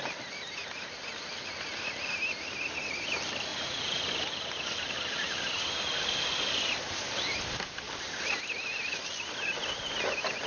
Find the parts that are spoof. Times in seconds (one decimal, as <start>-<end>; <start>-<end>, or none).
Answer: 3.5-4.0